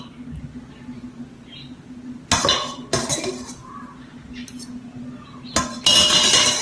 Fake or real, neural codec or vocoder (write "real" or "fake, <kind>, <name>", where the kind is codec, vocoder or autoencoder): real